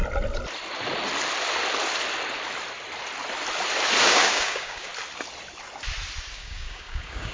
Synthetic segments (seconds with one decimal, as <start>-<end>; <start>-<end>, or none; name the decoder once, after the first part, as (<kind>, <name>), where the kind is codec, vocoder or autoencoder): 4.0-4.9 (codec, DAC); 6.3-7.3